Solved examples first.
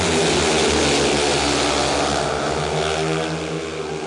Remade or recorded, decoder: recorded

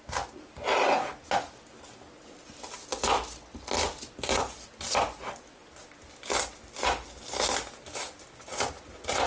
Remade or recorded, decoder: recorded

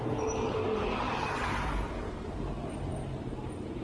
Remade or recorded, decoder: recorded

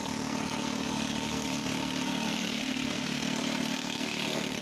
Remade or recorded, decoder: remade, codec, SNAC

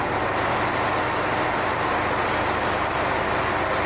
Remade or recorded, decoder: recorded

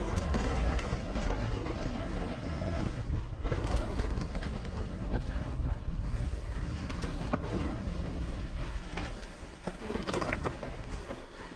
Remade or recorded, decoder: remade, codec, SNAC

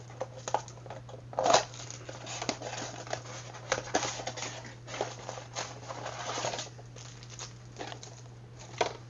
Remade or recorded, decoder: recorded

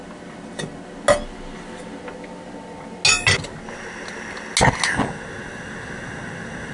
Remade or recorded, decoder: recorded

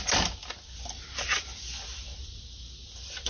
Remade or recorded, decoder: recorded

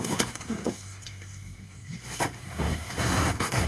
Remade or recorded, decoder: remade, codec, SNAC